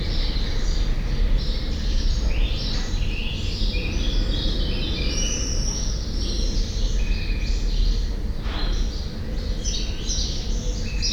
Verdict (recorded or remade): recorded